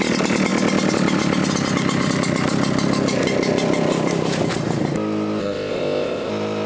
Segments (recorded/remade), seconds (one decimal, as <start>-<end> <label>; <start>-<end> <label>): 0.0-5.4 recorded; 5.4-6.3 remade; 6.3-6.7 recorded